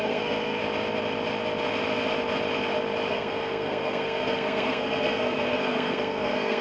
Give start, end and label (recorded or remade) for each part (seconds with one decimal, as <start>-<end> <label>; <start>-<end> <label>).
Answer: 0.0-0.6 remade; 0.6-3.1 recorded; 3.1-6.6 remade